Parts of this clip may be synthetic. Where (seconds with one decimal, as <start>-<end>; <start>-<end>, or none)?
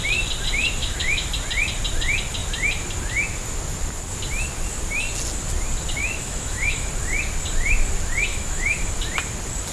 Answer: 0.8-1.3; 6.0-6.9; 8.3-8.9